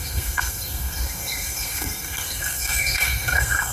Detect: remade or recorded remade